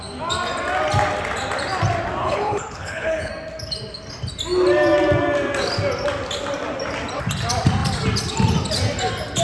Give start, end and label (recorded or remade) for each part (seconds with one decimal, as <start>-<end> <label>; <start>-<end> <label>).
0.0-2.2 recorded; 2.2-3.3 remade; 3.3-9.4 recorded